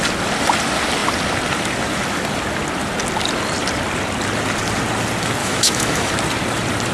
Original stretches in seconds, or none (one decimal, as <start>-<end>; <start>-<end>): 0.0-5.4; 6.1-6.9